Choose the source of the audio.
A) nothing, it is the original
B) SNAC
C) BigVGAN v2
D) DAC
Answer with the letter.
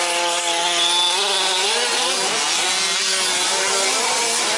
A